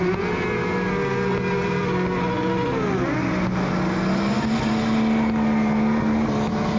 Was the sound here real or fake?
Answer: real